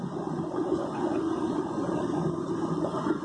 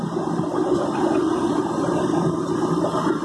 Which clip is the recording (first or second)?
second